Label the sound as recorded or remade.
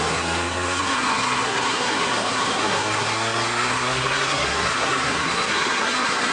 remade